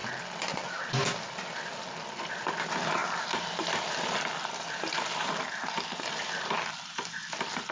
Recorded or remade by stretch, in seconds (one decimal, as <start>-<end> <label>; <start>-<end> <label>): 0.0-7.7 recorded

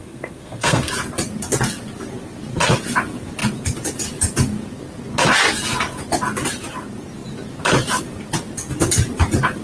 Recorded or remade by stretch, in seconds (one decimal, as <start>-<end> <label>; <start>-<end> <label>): 0.0-0.9 remade; 0.9-9.6 recorded

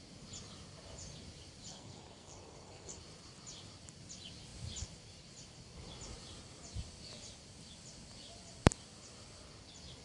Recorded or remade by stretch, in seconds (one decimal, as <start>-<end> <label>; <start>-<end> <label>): 0.0-1.7 recorded; 1.7-3.0 remade; 3.0-10.0 recorded

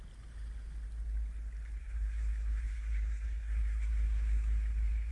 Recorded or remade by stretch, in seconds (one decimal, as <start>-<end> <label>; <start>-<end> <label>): 0.0-1.8 recorded; 1.8-5.1 remade

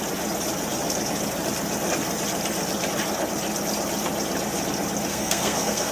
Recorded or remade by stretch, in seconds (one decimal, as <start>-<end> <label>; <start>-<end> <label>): 0.0-5.1 recorded; 5.1-5.9 remade

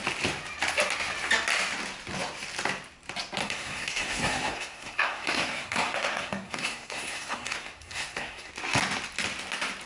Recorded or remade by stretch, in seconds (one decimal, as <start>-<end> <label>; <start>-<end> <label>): 0.0-3.4 recorded; 3.4-8.5 remade; 8.5-9.9 recorded